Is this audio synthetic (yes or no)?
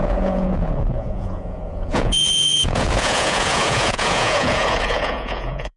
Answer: yes